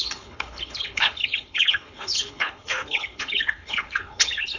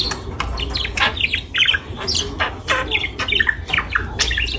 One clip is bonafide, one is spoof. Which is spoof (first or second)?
first